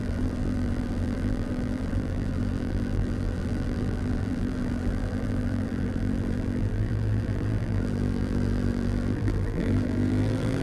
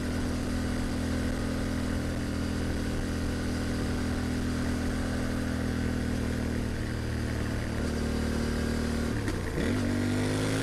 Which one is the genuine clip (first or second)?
second